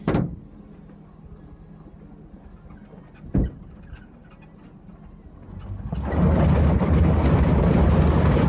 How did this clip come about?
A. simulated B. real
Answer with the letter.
B